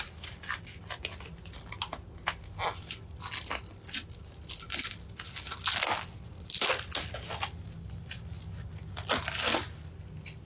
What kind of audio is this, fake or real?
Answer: real